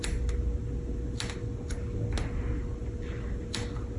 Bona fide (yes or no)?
yes